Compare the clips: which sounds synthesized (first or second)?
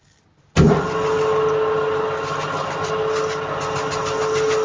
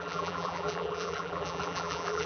second